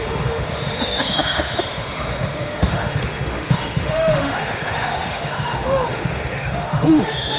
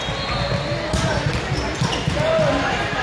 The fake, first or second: first